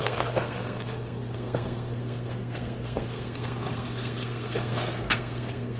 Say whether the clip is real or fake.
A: fake